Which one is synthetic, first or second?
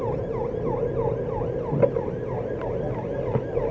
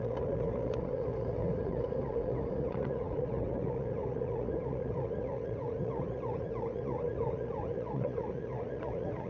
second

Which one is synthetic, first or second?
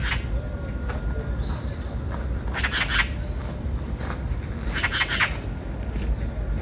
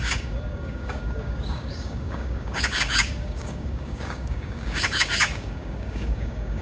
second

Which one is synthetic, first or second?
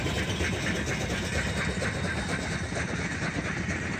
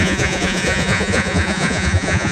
second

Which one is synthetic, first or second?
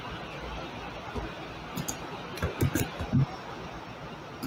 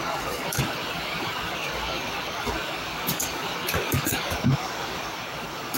second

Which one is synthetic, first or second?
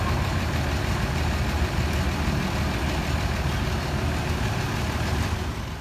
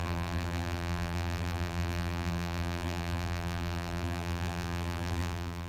second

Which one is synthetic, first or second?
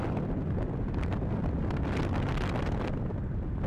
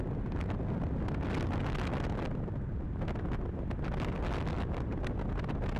first